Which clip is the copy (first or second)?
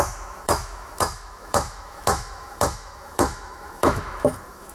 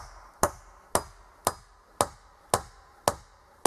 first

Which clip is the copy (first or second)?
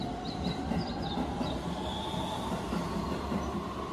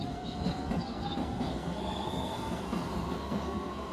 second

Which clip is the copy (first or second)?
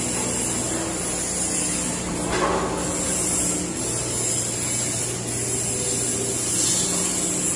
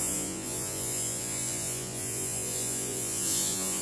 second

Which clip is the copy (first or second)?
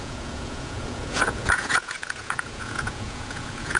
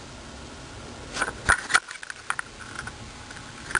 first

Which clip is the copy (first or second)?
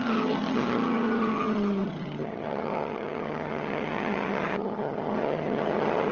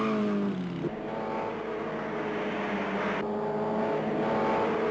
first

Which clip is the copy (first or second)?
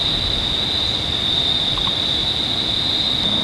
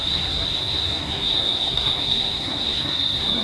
second